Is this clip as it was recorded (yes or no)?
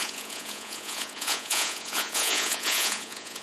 no